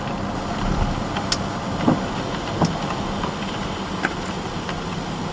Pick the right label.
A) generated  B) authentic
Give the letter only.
B